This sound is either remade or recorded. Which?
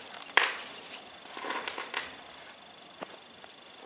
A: remade